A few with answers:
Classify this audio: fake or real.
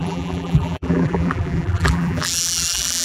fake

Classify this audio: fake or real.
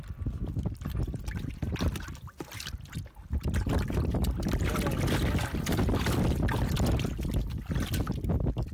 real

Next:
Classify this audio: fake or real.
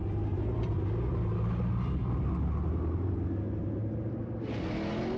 real